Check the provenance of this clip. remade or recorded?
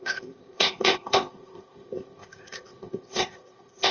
remade